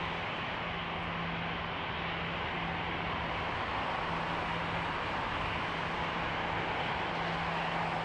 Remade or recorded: recorded